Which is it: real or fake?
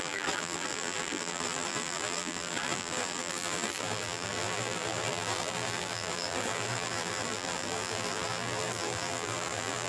fake